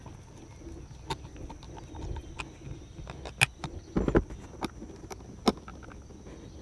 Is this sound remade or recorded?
recorded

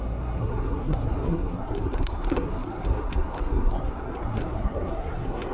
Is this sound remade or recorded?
remade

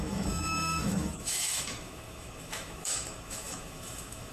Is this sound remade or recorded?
remade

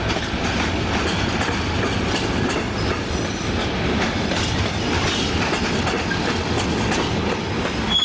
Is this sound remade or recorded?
recorded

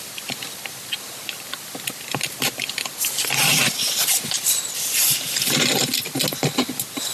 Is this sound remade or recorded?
recorded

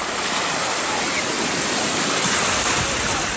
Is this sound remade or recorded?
recorded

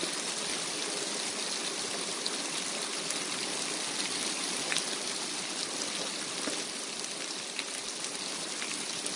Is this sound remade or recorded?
recorded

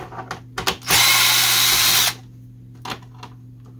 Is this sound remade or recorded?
recorded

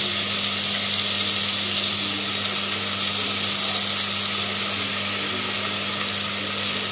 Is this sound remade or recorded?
recorded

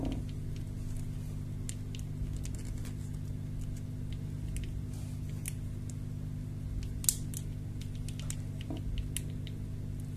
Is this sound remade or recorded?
recorded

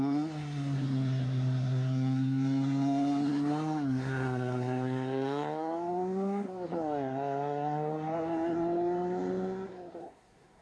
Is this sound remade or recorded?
remade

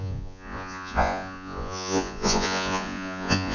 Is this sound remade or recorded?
remade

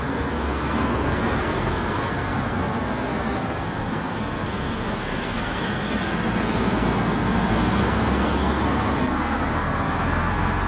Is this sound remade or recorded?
remade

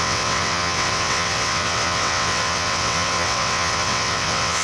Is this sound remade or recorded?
remade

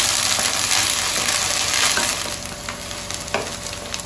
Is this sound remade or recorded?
recorded